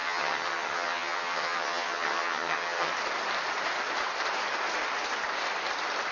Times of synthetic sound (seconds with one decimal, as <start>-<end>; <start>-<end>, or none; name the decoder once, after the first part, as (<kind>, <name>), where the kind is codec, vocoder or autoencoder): 0.0-2.9 (vocoder, HiFi-GAN)